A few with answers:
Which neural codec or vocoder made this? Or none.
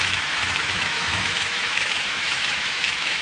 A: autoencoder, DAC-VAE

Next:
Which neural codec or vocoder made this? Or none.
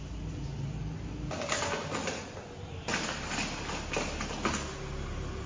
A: none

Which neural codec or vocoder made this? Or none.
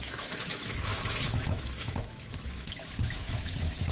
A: autoencoder, DAC-VAE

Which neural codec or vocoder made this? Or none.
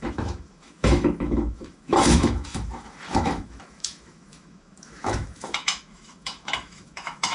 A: autoencoder, DAC-VAE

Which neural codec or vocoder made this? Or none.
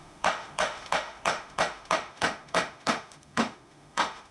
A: autoencoder, DAC-VAE